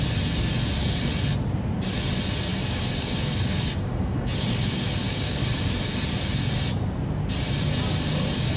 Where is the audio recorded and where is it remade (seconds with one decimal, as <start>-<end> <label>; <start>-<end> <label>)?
0.0-2.5 recorded; 2.5-5.4 remade; 5.4-8.6 recorded